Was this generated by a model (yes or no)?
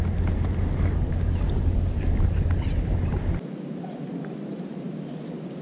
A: no